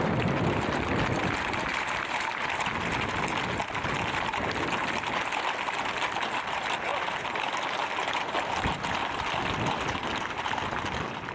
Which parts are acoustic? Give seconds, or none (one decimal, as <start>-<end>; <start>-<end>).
0.0-1.7; 2.7-11.3